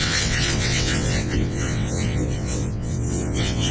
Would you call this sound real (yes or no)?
no